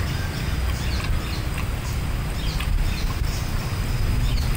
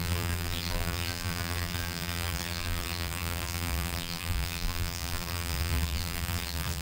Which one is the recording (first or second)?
first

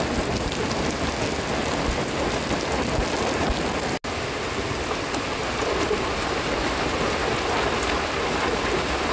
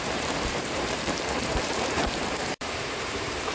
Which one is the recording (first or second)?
first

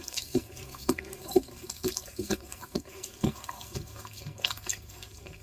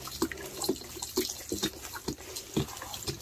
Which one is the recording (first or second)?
second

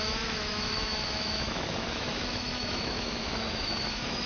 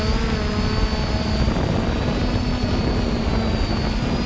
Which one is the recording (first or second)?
second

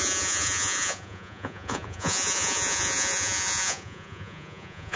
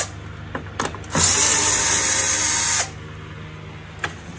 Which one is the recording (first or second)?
second